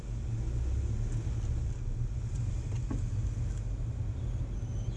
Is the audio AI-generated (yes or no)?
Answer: no